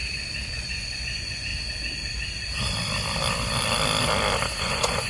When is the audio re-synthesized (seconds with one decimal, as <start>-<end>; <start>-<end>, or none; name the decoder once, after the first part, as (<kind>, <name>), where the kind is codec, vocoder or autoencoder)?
0.5-1.5 (vocoder, Vocos); 4.6-5.1